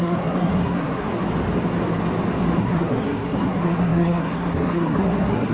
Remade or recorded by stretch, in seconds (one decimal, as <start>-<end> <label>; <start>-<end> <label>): 0.0-1.1 remade; 1.1-2.6 recorded; 2.6-5.5 remade